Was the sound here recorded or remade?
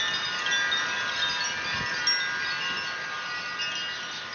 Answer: recorded